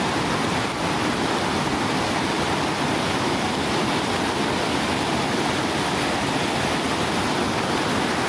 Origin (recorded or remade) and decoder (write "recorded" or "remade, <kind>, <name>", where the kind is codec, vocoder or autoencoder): recorded